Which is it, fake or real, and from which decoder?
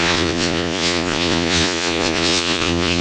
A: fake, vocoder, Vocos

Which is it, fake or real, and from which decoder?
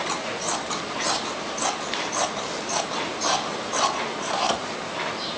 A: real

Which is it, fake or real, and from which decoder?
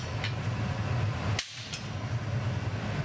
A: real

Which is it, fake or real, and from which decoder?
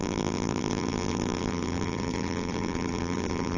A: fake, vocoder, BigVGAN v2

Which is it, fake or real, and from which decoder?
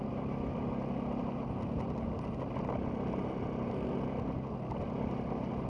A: real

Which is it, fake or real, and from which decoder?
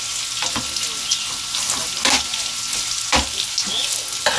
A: real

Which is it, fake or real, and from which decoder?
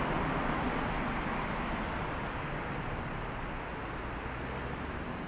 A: real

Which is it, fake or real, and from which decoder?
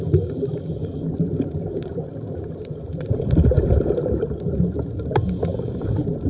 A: fake, vocoder, BigVGAN v2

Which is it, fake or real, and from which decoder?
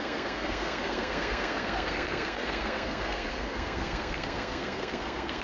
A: fake, codec, SNAC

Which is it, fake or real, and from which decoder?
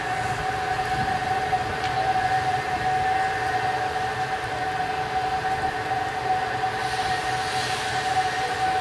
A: real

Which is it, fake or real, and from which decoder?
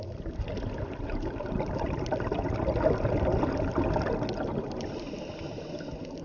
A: real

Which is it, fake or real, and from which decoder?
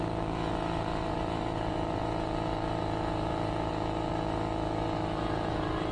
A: fake, vocoder, Vocos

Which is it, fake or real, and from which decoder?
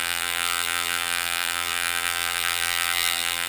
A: fake, vocoder, BigVGAN v2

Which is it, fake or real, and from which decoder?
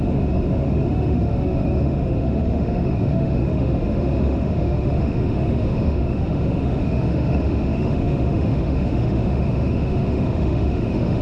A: fake, autoencoder, DAC-VAE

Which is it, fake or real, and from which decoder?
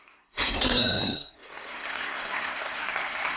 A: fake, codec, SNAC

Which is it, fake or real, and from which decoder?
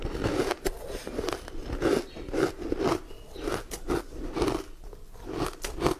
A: real